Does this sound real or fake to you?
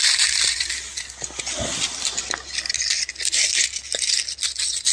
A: real